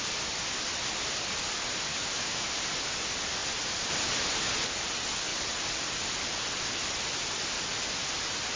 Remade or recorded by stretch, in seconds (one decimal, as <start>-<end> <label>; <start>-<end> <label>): 0.0-1.9 recorded; 1.9-2.5 remade; 2.5-8.6 recorded